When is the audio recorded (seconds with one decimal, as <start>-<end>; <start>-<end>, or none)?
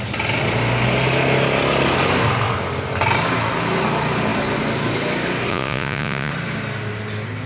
0.0-5.5; 6.3-7.5